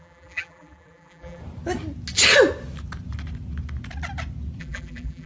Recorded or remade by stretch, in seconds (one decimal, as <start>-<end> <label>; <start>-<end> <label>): 0.0-1.4 remade; 1.4-4.6 recorded; 4.6-5.3 remade